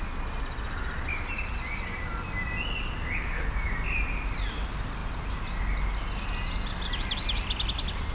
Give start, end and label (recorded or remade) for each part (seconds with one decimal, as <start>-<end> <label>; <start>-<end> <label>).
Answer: 0.0-8.1 recorded